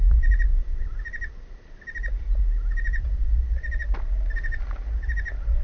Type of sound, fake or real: real